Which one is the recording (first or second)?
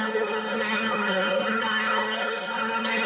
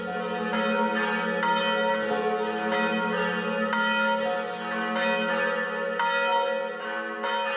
second